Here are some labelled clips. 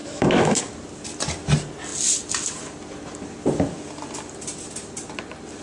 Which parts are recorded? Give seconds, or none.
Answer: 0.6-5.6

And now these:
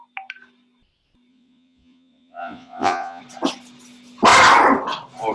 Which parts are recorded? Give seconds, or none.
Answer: 0.0-1.3; 3.2-5.3

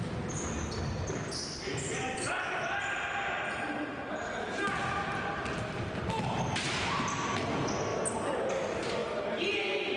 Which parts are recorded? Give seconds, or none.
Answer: 0.0-10.0

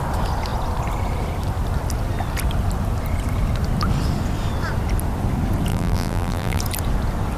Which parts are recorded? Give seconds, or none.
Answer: 0.0-5.7; 6.6-7.4

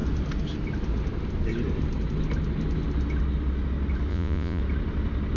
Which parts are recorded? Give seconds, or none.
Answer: 0.0-4.1; 4.6-5.4

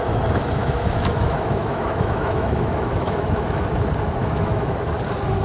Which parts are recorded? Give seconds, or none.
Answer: 0.0-0.6; 3.6-4.2; 5.0-5.4

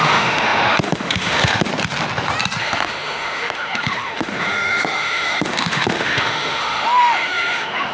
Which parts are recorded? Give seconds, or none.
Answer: 1.7-2.6

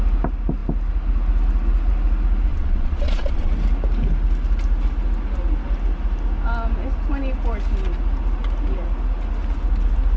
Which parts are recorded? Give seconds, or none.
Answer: 0.0-2.5; 3.5-10.2